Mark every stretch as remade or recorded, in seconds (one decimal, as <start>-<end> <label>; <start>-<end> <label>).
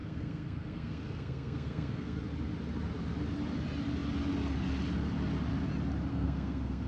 0.0-2.2 remade; 2.2-6.1 recorded; 6.1-6.9 remade